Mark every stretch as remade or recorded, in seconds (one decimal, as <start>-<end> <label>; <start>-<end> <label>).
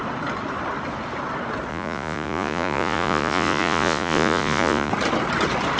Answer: 0.0-1.7 recorded; 1.7-4.9 remade; 4.9-5.8 recorded